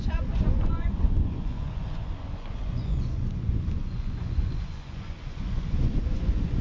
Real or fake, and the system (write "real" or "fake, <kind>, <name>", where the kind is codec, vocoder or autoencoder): fake, vocoder, Vocos